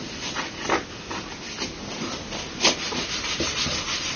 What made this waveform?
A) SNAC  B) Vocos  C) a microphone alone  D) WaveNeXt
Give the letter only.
C